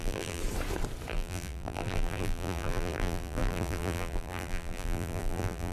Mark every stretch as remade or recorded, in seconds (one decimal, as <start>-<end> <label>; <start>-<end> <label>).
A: 0.0-0.4 remade; 0.4-1.1 recorded; 1.1-5.7 remade